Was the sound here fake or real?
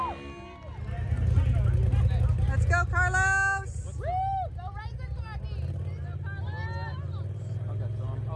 real